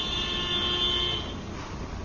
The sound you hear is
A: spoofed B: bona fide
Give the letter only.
B